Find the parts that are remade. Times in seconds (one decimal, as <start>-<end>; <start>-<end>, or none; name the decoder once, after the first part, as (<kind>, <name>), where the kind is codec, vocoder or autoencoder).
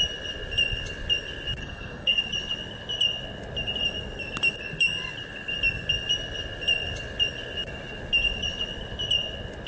1.6-2.2 (codec, SNAC)